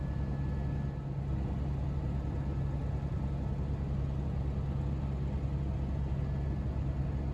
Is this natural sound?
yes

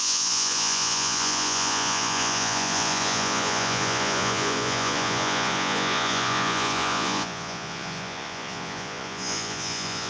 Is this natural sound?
no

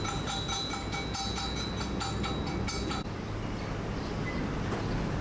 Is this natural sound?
yes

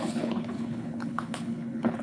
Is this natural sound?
no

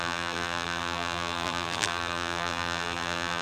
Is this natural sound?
no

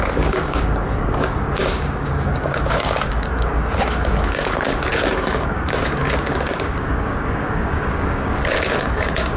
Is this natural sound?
no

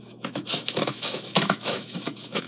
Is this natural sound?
no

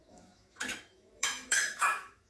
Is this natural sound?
no